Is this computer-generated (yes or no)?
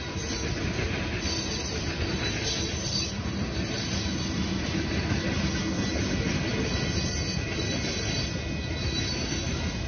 no